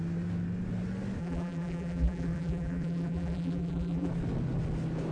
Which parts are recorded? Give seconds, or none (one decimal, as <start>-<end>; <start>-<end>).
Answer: 0.0-1.2; 4.1-5.1